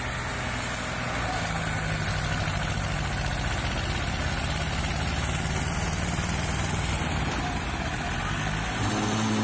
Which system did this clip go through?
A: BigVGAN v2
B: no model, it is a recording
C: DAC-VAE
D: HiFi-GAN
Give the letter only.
B